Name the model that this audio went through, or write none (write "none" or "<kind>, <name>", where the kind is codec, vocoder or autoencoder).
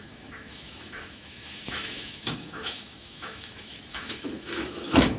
autoencoder, DAC-VAE